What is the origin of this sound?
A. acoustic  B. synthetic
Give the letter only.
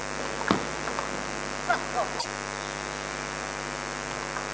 A